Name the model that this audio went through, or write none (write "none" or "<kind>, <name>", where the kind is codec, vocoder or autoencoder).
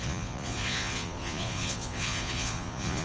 vocoder, Vocos